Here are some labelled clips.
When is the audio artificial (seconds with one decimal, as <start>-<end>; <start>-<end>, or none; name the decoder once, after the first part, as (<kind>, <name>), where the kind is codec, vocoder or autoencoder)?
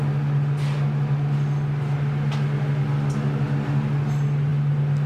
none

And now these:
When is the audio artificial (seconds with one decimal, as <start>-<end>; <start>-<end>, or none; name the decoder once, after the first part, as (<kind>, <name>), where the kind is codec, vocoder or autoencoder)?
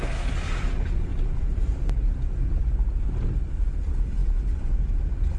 none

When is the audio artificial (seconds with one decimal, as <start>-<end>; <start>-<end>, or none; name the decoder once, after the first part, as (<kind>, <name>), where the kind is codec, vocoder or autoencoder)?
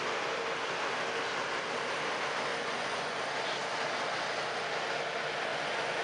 2.5-3.2 (vocoder, Vocos); 5.5-6.0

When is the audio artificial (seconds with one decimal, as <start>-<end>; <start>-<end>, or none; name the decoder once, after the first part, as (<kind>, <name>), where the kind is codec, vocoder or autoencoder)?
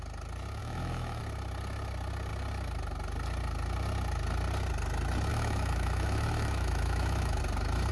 0.6-1.2 (autoencoder, DAC-VAE); 5.3-7.4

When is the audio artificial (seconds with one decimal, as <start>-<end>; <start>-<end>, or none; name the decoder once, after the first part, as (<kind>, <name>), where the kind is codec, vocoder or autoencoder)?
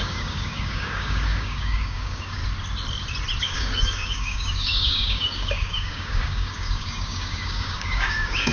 0.0-2.4 (codec, DAC); 3.4-8.5